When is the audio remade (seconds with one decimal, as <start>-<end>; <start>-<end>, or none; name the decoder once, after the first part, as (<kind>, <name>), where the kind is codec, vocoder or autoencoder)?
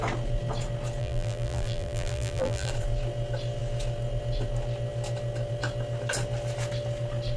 1.0-2.7 (vocoder, BigVGAN v2)